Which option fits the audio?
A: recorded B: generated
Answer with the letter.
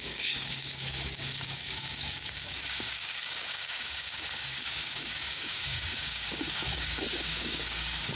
B